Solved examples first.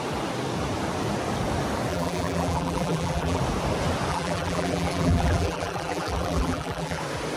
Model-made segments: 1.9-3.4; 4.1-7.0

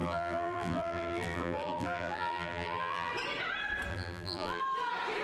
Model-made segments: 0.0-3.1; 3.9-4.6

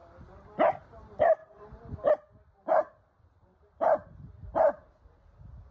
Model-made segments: 1.4-2.1; 3.4-5.2